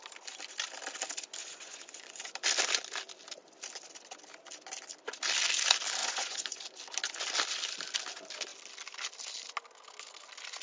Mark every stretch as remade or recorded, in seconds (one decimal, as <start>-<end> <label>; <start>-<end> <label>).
0.0-1.4 recorded; 1.4-2.3 remade; 2.3-6.0 recorded; 6.0-6.6 remade; 6.6-10.6 recorded